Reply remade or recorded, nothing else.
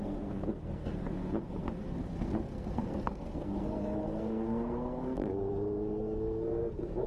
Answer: remade